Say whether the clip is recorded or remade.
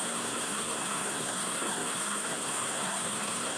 remade